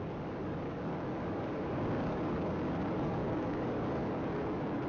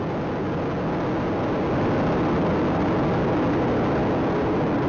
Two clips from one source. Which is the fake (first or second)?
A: first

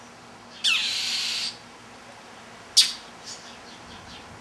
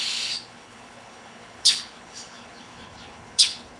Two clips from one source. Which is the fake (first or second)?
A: second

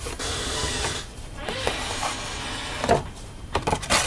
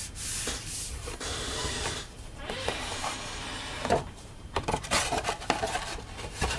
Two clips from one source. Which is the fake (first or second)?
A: second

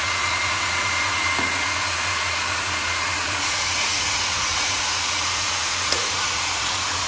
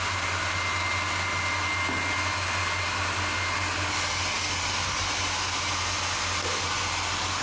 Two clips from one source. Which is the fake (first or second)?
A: first